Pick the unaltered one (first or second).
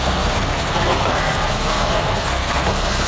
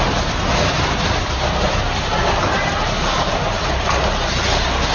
second